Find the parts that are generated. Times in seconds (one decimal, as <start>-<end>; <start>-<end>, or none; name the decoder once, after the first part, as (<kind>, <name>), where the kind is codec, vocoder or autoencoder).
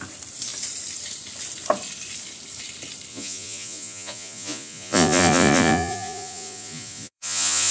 3.1-7.7 (vocoder, Vocos)